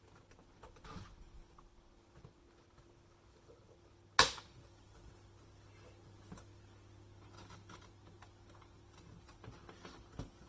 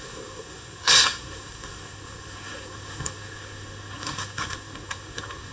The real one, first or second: first